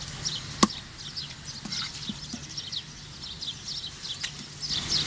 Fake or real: real